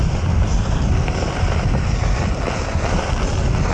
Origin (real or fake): real